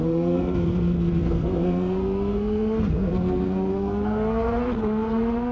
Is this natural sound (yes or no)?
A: no